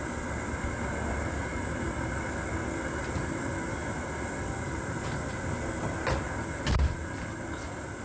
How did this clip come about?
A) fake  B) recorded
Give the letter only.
B